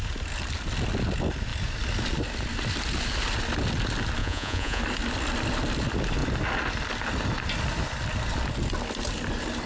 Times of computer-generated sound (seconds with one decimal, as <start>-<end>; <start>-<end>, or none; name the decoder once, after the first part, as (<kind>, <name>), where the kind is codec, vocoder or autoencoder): 4.2-4.8 (vocoder, Vocos)